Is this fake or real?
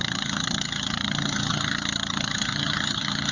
fake